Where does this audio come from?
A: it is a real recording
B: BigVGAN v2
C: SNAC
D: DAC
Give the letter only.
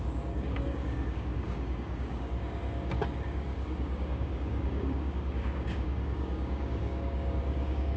D